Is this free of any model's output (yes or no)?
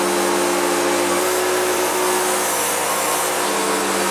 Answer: yes